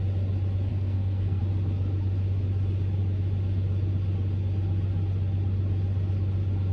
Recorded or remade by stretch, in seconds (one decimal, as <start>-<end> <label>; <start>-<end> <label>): 0.0-0.7 recorded; 0.7-1.4 remade; 1.4-6.7 recorded

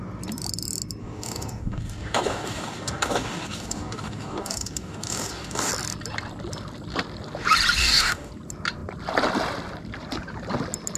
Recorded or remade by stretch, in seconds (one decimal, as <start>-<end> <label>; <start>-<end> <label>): 0.0-1.0 recorded; 1.0-5.7 remade; 5.7-7.8 recorded; 7.8-8.3 remade; 8.3-11.0 recorded

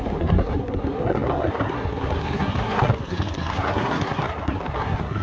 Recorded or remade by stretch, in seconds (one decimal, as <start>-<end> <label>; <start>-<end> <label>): 0.0-5.2 remade

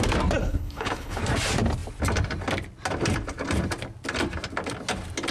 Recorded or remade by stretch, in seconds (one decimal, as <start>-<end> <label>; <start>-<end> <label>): 0.0-0.4 recorded; 0.4-1.2 remade; 1.2-5.3 recorded

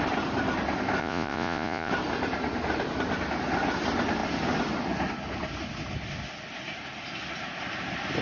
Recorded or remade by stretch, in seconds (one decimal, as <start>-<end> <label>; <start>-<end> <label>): 0.0-1.0 recorded; 1.0-1.9 remade; 1.9-8.2 recorded